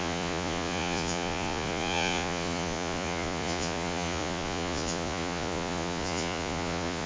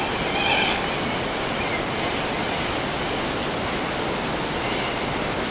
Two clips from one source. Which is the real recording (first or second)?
second